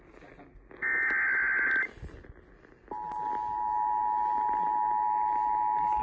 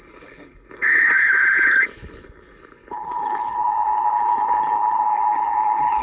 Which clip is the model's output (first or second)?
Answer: second